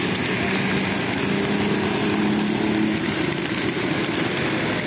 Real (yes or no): yes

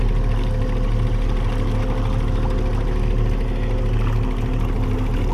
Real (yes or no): yes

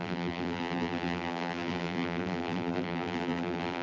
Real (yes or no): no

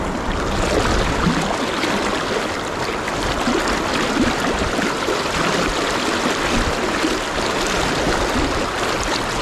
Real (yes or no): yes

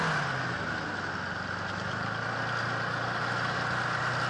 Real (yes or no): yes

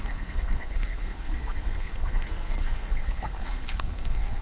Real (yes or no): no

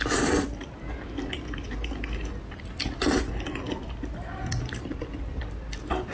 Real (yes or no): yes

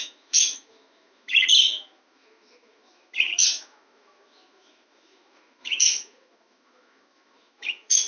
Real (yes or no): no